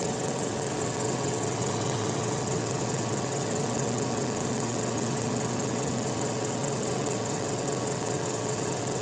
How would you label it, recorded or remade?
remade